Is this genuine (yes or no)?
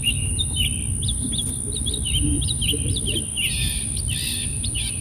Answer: yes